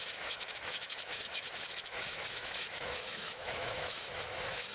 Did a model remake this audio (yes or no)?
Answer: yes